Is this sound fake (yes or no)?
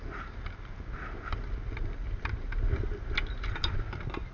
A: no